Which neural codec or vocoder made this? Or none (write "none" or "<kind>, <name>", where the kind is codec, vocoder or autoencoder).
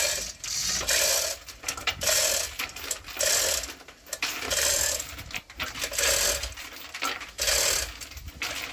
none